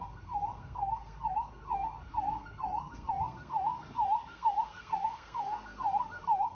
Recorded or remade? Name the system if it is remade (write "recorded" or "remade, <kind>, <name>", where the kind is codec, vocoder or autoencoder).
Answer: remade, codec, SNAC